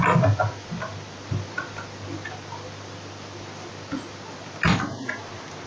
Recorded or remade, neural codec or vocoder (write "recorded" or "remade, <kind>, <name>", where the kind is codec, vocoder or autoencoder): recorded